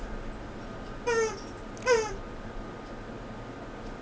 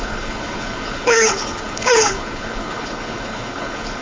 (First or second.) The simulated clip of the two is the second